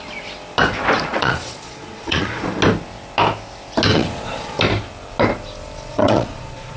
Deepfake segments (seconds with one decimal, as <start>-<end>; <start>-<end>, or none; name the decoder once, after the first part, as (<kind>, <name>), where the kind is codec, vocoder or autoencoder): 1.1-2.4 (vocoder, Vocos); 3.9-4.6; 5.9-6.8